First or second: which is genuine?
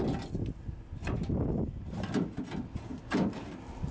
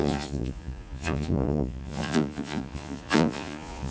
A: first